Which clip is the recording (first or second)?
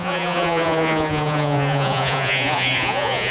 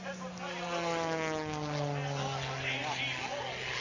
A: second